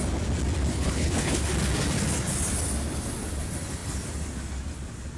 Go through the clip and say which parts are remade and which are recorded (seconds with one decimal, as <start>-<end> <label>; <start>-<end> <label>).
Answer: 0.0-0.7 recorded; 0.7-1.5 remade; 1.5-5.2 recorded